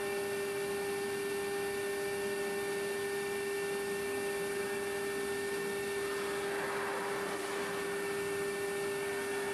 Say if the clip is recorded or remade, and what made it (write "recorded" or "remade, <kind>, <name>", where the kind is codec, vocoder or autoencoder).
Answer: recorded